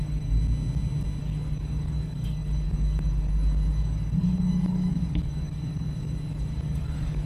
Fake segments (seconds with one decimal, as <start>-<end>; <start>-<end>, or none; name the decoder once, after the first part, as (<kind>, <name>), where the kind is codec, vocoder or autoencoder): 0.0-0.4 (codec, DAC); 1.2-7.3